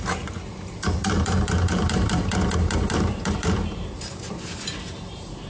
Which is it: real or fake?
fake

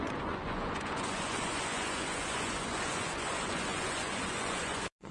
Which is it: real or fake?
fake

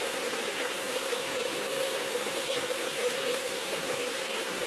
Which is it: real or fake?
fake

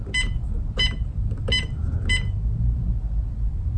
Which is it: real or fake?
real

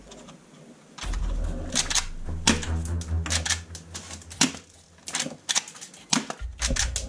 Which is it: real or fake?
real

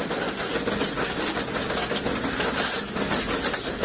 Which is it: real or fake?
real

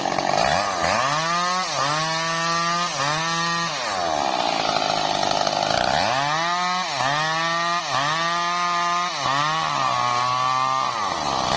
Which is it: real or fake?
real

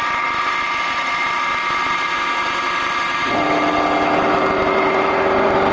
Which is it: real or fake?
real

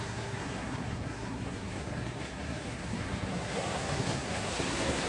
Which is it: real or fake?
fake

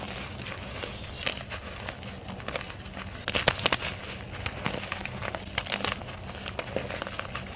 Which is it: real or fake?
real